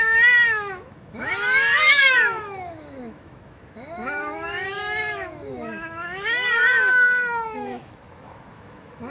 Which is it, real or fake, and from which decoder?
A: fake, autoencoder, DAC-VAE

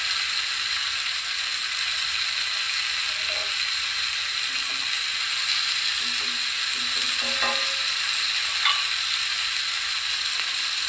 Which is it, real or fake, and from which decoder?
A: real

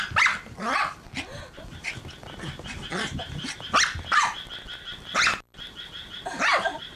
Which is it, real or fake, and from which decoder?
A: real